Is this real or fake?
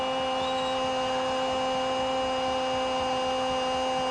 real